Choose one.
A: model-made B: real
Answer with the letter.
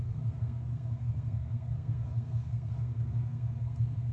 A